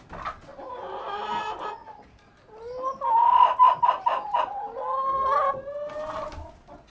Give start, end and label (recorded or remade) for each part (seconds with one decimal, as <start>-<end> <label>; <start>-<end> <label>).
0.0-6.9 recorded